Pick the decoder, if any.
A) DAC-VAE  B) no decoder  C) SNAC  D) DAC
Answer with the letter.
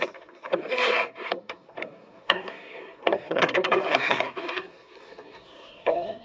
C